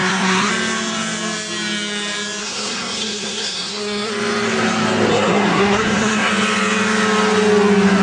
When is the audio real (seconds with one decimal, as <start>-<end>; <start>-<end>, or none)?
0.5-2.4; 4.1-5.1; 6.3-8.0